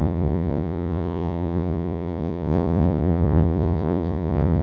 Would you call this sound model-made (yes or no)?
yes